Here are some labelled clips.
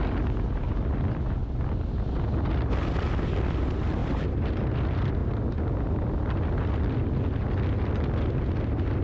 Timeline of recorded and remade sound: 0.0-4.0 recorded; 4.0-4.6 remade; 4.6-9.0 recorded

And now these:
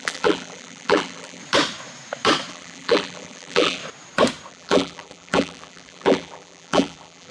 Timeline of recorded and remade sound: 0.0-1.4 remade; 1.4-2.5 recorded; 2.5-3.8 remade; 3.8-4.5 recorded; 4.5-7.3 remade

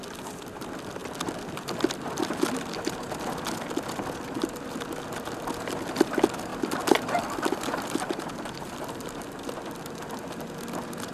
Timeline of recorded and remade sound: 0.0-6.5 recorded; 6.5-10.1 remade; 10.1-11.1 recorded

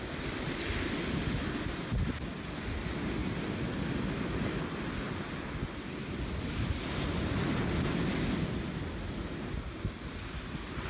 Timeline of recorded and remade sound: 0.0-10.9 recorded

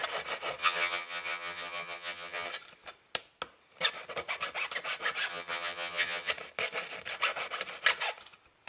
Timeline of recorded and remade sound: 0.0-0.6 recorded; 0.6-2.5 remade; 2.5-5.3 recorded; 5.3-6.3 remade; 6.3-8.7 recorded

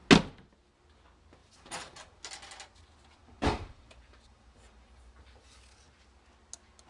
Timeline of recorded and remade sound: 0.0-1.4 recorded; 1.4-2.2 remade; 2.2-3.2 recorded; 3.2-5.1 remade; 5.1-6.9 recorded

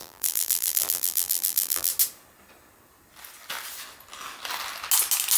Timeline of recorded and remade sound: 0.0-1.9 remade; 1.9-5.4 recorded